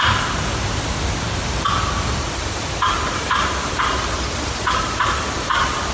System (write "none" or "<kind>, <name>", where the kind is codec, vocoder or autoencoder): none